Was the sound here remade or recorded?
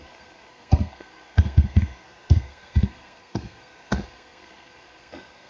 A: remade